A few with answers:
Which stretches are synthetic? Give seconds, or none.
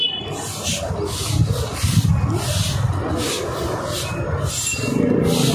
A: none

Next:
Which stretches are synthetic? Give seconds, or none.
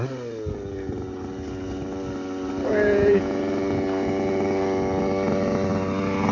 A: 2.7-3.4 (vocoder, Vocos)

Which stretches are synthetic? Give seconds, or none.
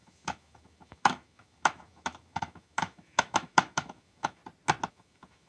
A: 0.0-4.4 (autoencoder, DAC-VAE); 4.9-5.5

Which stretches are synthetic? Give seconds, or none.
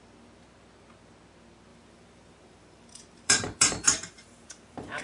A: 1.7-5.0 (vocoder, BigVGAN v2)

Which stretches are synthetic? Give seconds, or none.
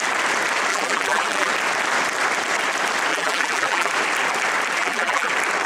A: 0.7-1.5 (vocoder, BigVGAN v2); 3.1-3.9; 4.8-5.3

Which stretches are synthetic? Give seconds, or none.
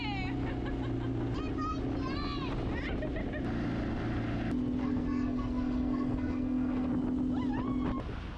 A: 4.8-6.9 (codec, SNAC)